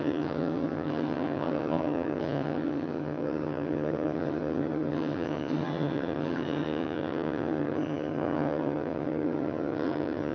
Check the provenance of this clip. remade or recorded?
remade